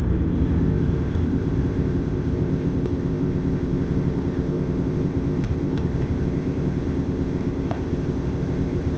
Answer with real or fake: fake